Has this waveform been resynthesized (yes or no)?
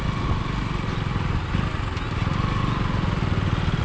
no